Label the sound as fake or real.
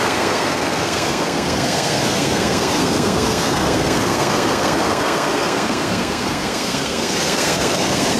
fake